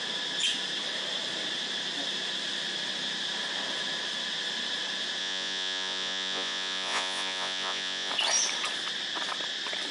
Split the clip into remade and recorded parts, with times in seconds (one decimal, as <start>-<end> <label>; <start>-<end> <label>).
0.0-5.2 recorded; 5.2-8.1 remade; 8.1-9.9 recorded